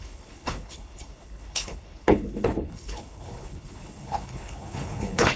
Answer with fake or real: fake